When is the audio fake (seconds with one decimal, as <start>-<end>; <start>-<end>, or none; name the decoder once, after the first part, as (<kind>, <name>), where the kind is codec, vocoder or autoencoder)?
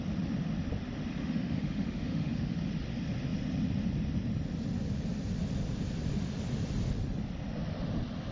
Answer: 1.2-2.6 (autoencoder, DAC-VAE)